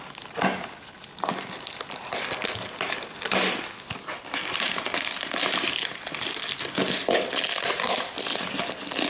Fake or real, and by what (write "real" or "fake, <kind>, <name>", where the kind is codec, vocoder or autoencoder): real